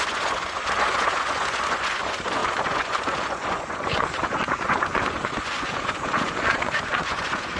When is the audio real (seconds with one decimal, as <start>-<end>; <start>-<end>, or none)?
none